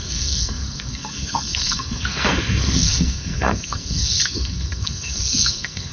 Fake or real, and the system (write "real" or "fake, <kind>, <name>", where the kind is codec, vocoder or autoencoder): fake, codec, SNAC